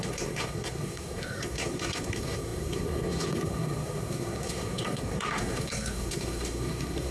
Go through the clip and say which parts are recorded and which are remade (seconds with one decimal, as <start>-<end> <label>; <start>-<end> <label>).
0.0-7.1 remade